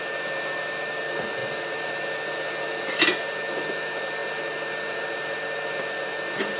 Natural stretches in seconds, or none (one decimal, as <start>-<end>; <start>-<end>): 0.0-6.6